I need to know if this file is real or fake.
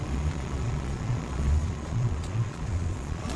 fake